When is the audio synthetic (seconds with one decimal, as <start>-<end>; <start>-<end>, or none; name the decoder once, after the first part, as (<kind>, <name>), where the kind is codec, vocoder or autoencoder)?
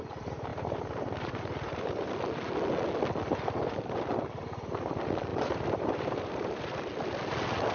0.5-2.1 (vocoder, BigVGAN v2); 5.3-6.8